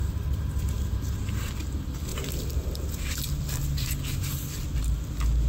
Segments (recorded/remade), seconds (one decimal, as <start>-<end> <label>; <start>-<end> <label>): 0.0-2.1 recorded; 2.1-4.6 remade; 4.6-5.5 recorded